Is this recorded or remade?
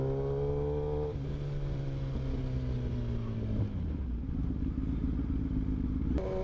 recorded